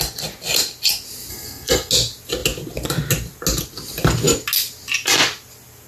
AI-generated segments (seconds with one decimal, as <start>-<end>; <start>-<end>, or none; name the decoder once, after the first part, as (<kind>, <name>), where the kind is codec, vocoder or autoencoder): 1.3-1.9 (codec, SNAC)